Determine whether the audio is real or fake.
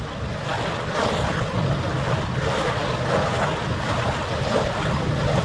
real